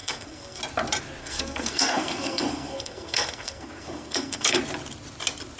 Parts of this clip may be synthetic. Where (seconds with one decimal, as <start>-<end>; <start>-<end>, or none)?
0.0-0.6; 1.2-4.6